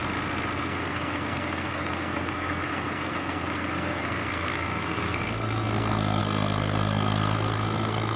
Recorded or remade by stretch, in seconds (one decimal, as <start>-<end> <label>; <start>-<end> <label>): 0.0-0.6 recorded; 0.6-8.2 remade